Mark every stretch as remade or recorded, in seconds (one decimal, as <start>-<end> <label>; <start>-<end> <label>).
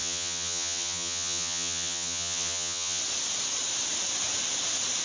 0.0-3.0 remade; 3.0-5.0 recorded